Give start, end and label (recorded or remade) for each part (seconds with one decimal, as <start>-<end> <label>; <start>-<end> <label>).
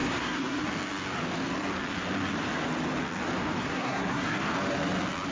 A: 0.0-0.6 remade; 0.6-3.6 recorded; 3.6-4.4 remade; 4.4-5.3 recorded